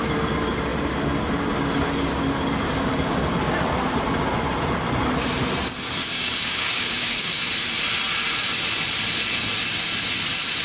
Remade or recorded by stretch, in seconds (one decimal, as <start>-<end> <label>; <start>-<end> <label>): 0.0-6.1 recorded; 6.1-7.5 remade; 7.5-10.6 recorded